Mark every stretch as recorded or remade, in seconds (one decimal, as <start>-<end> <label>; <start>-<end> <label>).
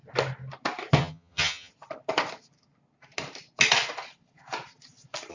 0.0-1.0 recorded; 1.0-1.7 remade; 1.7-5.3 recorded